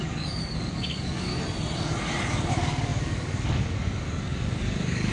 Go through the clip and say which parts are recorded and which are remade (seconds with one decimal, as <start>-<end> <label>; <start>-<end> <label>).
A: 0.0-1.3 remade; 1.3-2.5 recorded; 2.5-5.1 remade